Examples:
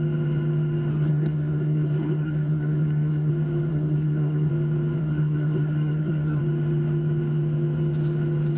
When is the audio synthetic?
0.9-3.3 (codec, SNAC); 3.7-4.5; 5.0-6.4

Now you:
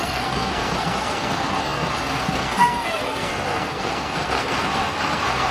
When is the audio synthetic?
0.0-5.5 (codec, SNAC)

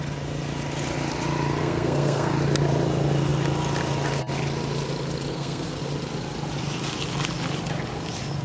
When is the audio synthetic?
1.6-2.3 (codec, SNAC); 5.3-5.8

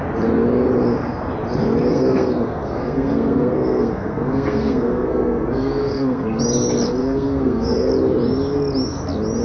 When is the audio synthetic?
1.9-6.4 (codec, SNAC); 7.0-7.9